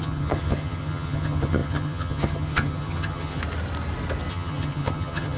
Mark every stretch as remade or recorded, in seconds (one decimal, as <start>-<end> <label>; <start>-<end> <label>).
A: 0.0-3.4 remade; 3.4-4.3 recorded; 4.3-5.4 remade